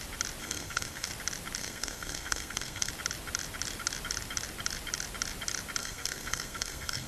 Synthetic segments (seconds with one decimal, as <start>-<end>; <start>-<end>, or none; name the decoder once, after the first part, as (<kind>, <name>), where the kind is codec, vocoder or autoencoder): 0.4-1.1 (codec, SNAC); 1.6-2.9; 5.8-7.1